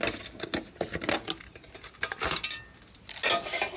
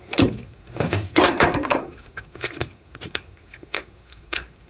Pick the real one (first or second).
first